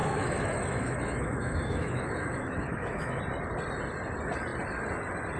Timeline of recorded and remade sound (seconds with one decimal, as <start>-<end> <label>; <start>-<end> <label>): 0.0-3.2 remade; 3.2-5.4 recorded